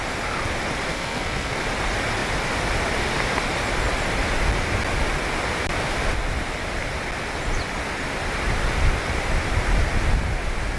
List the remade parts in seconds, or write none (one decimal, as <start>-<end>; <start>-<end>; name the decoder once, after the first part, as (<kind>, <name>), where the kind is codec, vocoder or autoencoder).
0.9-1.6 (codec, SNAC)